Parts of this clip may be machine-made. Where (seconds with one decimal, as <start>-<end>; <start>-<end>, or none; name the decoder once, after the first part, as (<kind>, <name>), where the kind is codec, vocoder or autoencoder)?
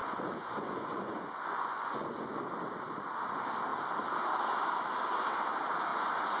0.0-2.5 (vocoder, Vocos); 5.9-6.4